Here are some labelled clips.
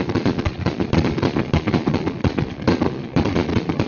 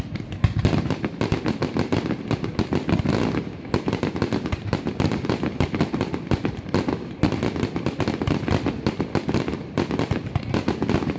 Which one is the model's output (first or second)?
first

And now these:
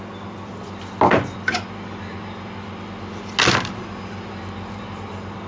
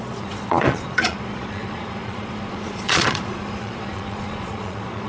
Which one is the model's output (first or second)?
second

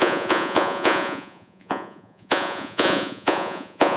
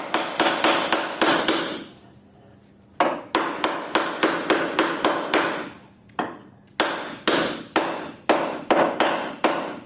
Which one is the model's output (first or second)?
first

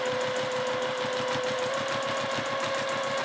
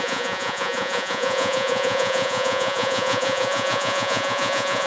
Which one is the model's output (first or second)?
second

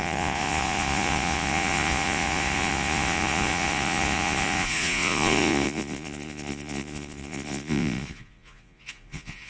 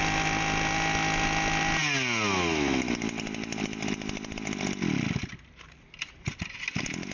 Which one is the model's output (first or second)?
first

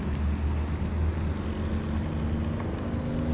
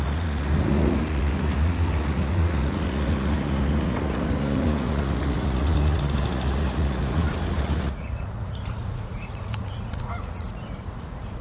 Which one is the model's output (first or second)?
second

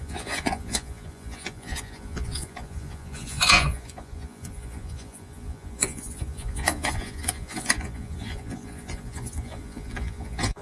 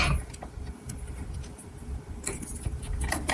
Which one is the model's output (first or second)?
first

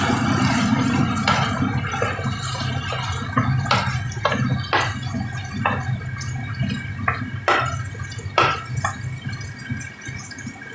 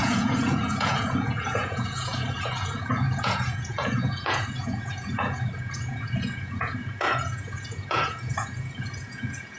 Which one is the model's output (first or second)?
second